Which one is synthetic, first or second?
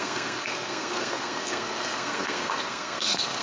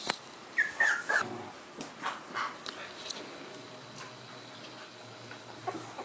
first